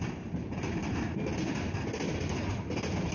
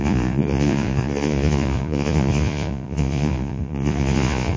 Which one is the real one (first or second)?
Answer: first